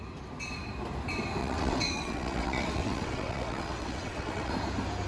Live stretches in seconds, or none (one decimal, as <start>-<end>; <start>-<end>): 0.0-1.4; 4.5-5.1

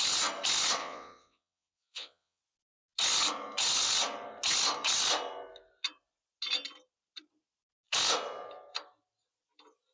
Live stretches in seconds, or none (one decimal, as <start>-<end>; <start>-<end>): 0.0-0.8; 2.4-9.9

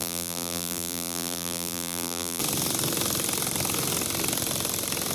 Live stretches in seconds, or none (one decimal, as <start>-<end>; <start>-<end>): 2.4-5.1

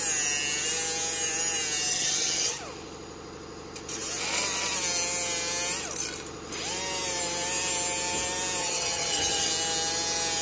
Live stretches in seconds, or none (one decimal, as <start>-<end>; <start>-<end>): 0.0-1.9; 2.6-8.6; 9.5-10.4